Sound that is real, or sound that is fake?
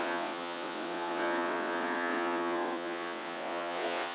fake